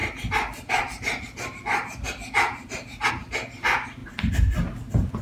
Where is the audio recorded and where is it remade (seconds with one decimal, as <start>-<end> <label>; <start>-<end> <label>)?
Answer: 0.0-5.2 recorded